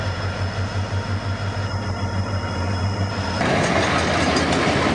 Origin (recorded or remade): recorded